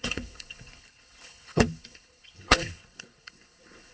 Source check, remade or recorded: remade